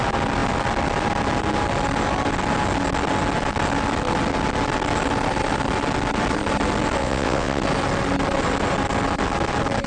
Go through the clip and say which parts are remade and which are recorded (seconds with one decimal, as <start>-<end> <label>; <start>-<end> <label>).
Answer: 0.0-7.0 recorded; 7.0-7.6 remade; 7.6-9.9 recorded

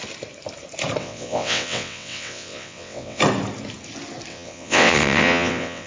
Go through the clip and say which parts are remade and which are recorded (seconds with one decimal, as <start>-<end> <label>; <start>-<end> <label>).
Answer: 0.0-1.0 recorded; 1.0-3.2 remade; 3.2-4.3 recorded; 4.3-5.9 remade

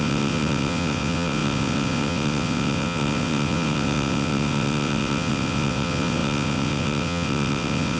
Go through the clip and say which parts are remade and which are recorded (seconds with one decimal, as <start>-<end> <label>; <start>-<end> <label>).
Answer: 0.0-8.0 remade

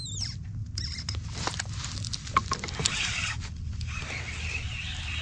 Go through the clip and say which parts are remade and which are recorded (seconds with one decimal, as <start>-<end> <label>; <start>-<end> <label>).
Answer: 0.0-5.2 recorded

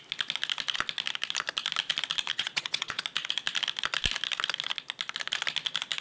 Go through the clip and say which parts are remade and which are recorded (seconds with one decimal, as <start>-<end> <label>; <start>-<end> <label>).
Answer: 0.0-2.3 recorded; 2.3-3.0 remade; 3.0-6.0 recorded